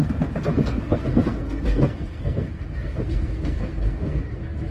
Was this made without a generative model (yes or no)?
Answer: no